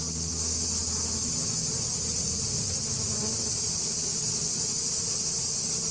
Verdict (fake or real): real